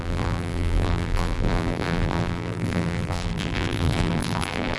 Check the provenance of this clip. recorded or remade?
remade